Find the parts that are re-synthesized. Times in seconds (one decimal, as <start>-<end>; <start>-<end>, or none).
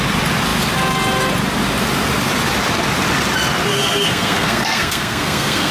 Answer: 3.7-5.7